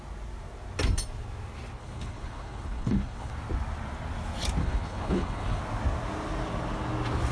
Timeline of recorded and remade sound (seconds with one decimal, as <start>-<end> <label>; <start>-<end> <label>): 0.0-1.8 recorded; 1.8-3.3 remade; 3.3-4.6 recorded; 4.6-5.6 remade; 5.6-7.3 recorded